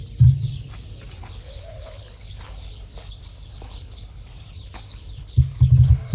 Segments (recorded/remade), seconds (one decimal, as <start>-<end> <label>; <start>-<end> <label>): 0.0-1.3 recorded; 1.3-6.1 remade